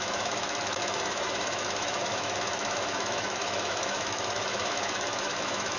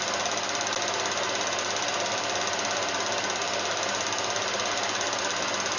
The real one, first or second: second